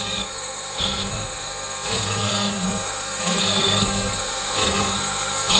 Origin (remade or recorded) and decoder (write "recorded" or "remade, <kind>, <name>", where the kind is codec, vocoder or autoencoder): remade, codec, SNAC